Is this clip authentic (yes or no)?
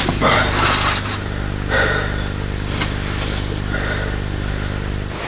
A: yes